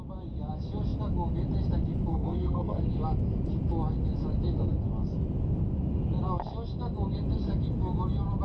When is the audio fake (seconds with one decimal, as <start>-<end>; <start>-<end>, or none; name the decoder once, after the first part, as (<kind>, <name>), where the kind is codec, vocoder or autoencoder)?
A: 2.1-2.8 (codec, SNAC)